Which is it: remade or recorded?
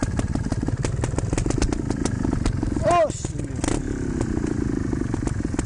recorded